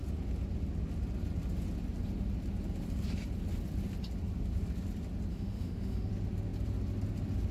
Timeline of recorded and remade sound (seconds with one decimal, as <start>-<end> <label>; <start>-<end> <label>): 0.0-5.3 recorded; 5.3-6.1 remade; 6.1-7.5 recorded

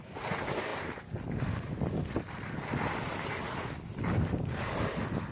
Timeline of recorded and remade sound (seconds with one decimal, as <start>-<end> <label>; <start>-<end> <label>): 0.0-5.3 recorded